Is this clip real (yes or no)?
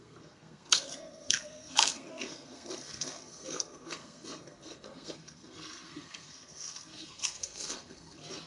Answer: no